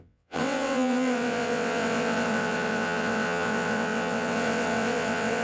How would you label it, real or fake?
fake